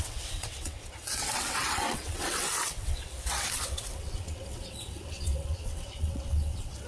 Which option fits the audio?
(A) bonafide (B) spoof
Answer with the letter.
B